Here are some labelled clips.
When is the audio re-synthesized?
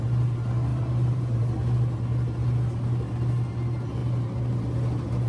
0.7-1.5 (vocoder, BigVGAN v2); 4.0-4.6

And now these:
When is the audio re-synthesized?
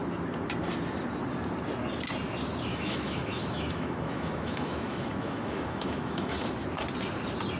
2.7-6.5 (autoencoder, DAC-VAE)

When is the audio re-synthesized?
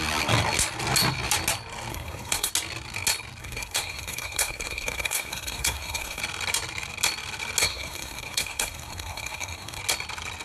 1.9-2.5 (codec, SNAC); 3.4-6.2; 7.6-9.8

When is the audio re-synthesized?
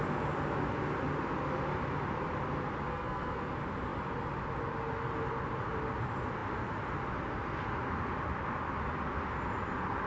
2.9-3.5 (codec, SNAC)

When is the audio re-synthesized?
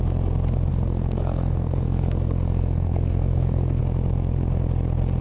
0.7-3.8 (codec, SNAC)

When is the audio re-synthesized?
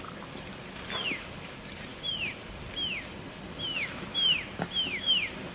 none